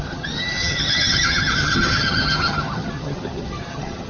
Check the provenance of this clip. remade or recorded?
remade